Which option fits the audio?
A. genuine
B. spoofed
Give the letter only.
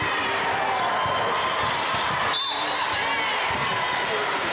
A